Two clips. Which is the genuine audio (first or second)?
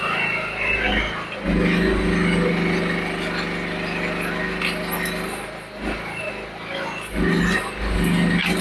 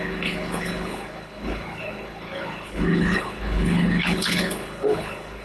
first